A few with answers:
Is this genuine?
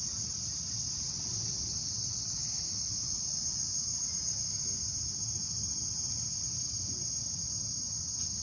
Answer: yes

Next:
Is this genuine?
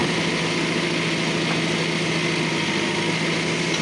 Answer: yes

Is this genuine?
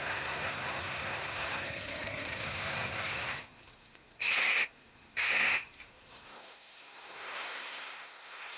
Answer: no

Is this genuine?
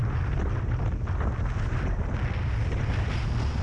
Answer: yes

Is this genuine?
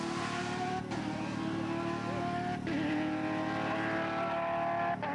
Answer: yes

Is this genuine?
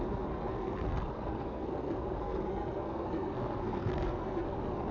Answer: no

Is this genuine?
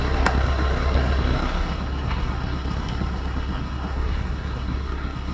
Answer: no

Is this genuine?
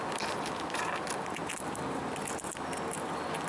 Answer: yes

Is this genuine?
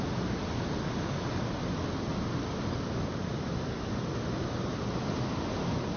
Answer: yes